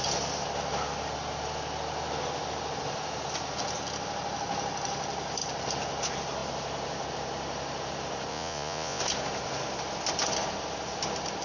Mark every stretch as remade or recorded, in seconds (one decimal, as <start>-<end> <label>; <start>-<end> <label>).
0.0-8.3 recorded; 8.3-9.0 remade; 9.0-11.4 recorded